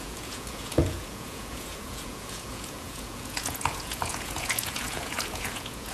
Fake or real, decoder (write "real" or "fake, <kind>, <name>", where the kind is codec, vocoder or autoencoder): fake, vocoder, Vocos